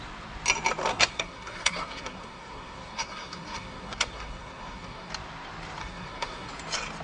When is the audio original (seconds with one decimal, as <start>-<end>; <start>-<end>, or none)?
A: 0.0-0.9; 5.1-5.8; 6.5-7.0